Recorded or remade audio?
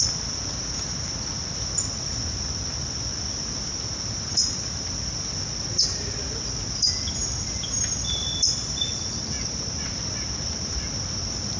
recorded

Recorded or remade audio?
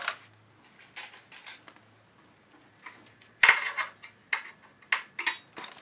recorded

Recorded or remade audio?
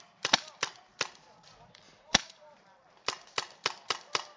remade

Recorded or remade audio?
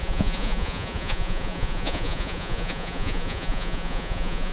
remade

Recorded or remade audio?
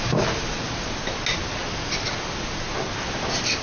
recorded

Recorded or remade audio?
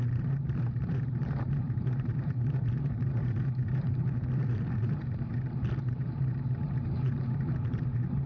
remade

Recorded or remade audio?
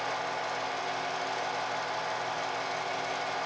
recorded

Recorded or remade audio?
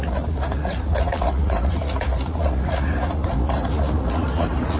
remade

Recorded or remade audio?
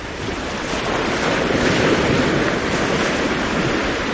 recorded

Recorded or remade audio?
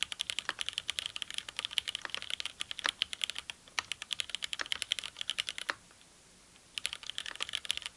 recorded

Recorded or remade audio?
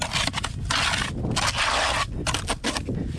recorded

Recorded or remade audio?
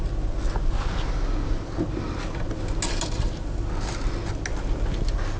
recorded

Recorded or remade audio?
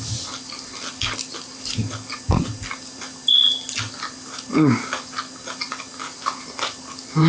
recorded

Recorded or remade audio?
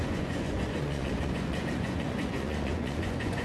remade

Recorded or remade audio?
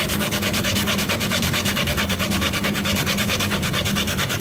remade